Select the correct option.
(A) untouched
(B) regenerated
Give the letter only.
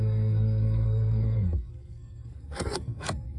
B